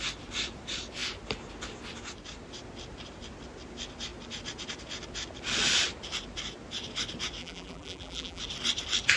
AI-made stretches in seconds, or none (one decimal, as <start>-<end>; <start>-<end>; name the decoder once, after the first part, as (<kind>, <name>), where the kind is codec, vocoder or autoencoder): 7.4-8.4 (vocoder, BigVGAN v2)